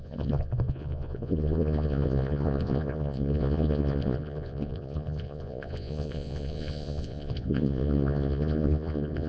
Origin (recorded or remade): remade